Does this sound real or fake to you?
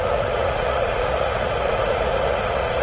fake